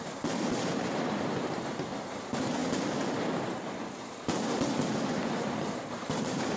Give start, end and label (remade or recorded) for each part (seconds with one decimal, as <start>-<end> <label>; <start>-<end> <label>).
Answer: 0.0-2.6 remade; 2.6-6.0 recorded; 6.0-6.6 remade